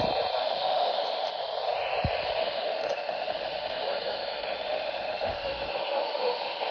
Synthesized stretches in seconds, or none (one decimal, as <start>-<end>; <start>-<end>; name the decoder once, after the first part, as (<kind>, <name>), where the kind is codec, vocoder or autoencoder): 0.4-1.4 (autoencoder, DAC-VAE); 2.4-6.7